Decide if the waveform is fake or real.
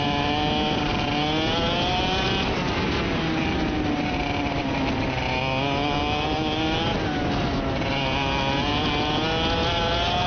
real